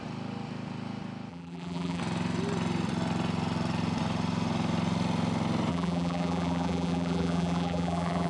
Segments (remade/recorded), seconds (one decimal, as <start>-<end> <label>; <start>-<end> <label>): 0.0-1.3 recorded; 1.3-2.0 remade; 2.0-5.7 recorded; 5.7-8.3 remade